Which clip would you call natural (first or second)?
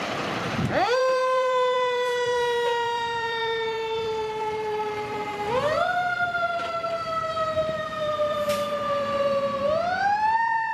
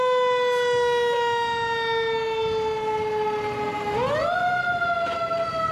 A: second